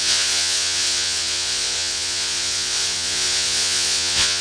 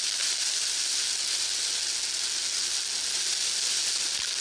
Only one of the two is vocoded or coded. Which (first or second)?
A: first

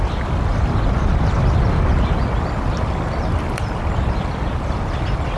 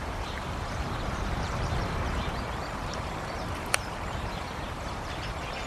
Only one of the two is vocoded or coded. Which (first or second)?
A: second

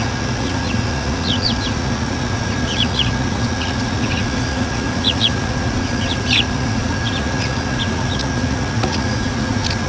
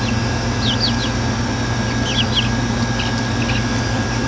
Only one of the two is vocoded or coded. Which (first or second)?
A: first